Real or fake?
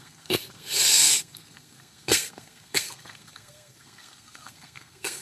fake